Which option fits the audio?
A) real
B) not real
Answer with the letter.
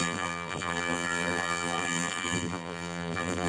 B